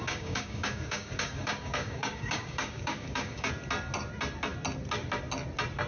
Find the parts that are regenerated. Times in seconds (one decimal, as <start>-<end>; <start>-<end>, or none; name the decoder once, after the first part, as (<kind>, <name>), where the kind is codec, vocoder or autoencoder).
0.0-3.5 (codec, DAC)